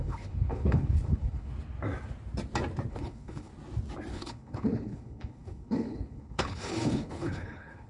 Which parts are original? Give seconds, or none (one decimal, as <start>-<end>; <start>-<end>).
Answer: 1.5-2.9; 3.5-4.1